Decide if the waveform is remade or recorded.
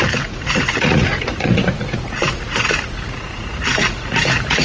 remade